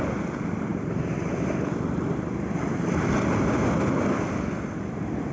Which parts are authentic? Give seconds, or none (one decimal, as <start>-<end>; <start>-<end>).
0.0-0.7; 2.6-5.3